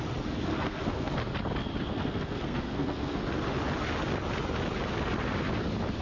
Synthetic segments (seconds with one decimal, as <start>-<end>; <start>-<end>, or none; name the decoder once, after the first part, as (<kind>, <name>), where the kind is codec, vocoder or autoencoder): 0.5-1.1 (codec, SNAC); 1.9-3.2